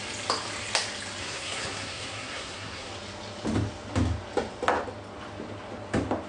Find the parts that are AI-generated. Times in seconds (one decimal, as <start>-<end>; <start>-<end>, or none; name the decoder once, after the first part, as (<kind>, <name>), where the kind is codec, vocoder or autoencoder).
1.2-2.9 (codec, SNAC)